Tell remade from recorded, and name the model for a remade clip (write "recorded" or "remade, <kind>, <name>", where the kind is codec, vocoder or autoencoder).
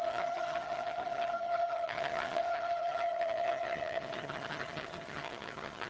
remade, vocoder, HiFi-GAN